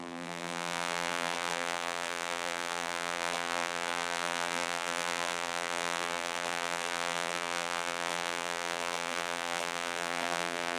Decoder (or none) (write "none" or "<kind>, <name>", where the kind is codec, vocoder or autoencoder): vocoder, BigVGAN v2